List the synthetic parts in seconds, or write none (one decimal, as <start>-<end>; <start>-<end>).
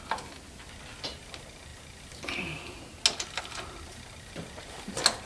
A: none